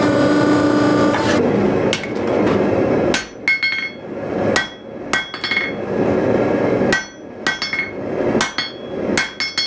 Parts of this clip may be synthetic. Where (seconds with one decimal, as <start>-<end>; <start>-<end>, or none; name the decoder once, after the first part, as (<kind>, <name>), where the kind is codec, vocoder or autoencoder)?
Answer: none